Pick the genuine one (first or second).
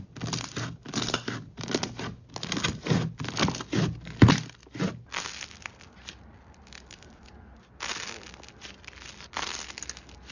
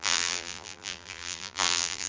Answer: first